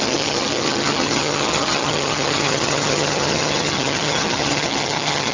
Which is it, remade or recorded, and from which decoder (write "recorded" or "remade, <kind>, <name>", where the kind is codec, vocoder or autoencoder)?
remade, vocoder, HiFi-GAN